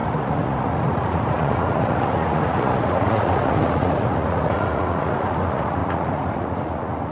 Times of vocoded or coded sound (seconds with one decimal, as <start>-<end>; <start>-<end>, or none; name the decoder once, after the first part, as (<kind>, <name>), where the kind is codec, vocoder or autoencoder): 0.0-7.1 (vocoder, Vocos)